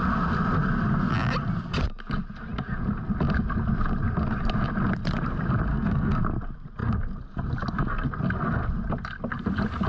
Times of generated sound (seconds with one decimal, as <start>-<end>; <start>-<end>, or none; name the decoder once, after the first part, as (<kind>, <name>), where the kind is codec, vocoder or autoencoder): 5.7-6.2 (codec, SNAC)